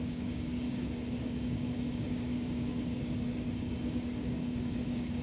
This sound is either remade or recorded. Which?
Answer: remade